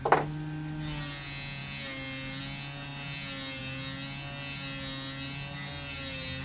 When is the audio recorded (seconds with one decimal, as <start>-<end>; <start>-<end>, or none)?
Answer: 0.0-6.4